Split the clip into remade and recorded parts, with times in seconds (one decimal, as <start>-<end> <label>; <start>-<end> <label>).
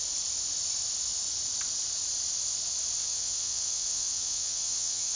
0.0-3.0 recorded; 3.0-5.2 remade